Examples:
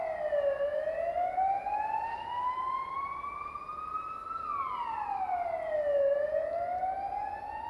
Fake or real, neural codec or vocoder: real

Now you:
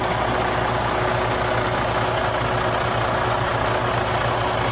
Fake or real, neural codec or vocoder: real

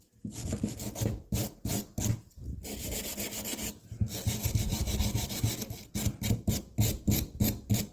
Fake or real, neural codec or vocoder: real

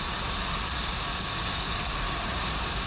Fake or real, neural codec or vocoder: fake, vocoder, BigVGAN v2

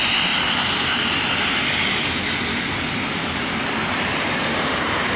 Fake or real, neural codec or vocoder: fake, vocoder, BigVGAN v2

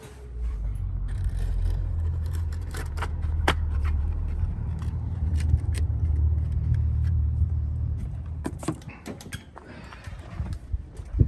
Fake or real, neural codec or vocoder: fake, vocoder, BigVGAN v2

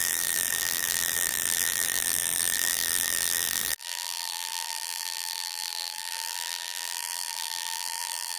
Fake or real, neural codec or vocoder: fake, vocoder, BigVGAN v2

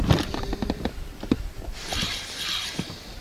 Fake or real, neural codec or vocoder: fake, vocoder, BigVGAN v2